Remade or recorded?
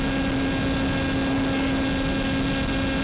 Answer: recorded